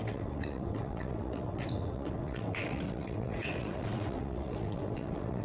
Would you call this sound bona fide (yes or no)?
no